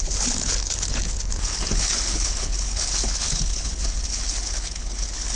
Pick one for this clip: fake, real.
fake